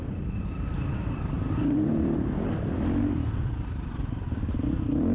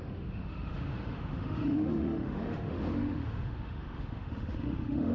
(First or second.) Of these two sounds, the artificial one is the second